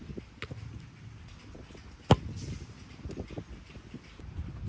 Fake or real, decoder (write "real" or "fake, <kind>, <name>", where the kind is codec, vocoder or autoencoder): real